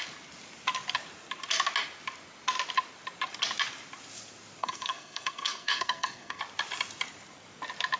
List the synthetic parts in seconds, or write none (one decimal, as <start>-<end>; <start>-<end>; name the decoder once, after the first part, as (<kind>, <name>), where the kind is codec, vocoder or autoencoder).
4.6-6.4 (codec, SNAC)